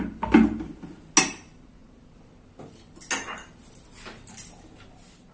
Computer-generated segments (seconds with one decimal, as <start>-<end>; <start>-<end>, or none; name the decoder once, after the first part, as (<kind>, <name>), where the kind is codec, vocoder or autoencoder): none